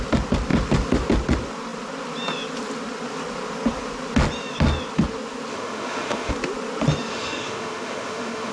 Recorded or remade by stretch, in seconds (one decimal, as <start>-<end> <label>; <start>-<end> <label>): 0.0-5.5 recorded; 5.5-6.3 remade; 6.3-7.1 recorded; 7.1-8.5 remade